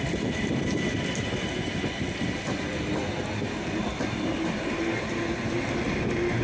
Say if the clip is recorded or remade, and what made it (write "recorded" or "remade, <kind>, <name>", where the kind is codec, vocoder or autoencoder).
remade, vocoder, BigVGAN v2